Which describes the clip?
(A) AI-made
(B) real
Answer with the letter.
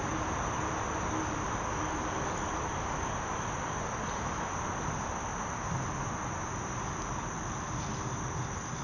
B